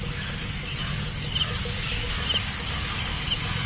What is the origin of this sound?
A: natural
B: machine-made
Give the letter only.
A